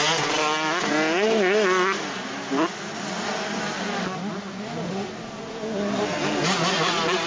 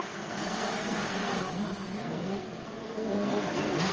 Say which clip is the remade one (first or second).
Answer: second